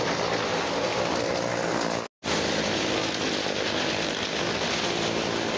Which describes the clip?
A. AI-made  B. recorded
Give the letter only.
B